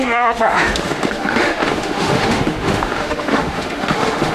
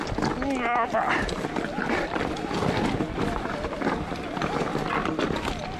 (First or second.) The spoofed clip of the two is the first